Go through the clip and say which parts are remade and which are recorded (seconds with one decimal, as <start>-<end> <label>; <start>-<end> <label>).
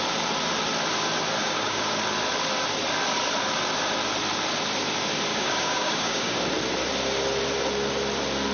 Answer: 0.0-1.4 recorded; 1.4-2.0 remade; 2.0-5.3 recorded; 5.3-6.4 remade; 6.4-8.5 recorded